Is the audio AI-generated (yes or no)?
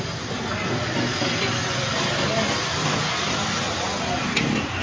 no